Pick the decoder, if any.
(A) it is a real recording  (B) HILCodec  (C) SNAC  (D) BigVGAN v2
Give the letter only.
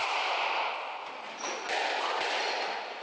A